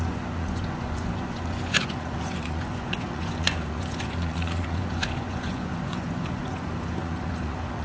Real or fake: fake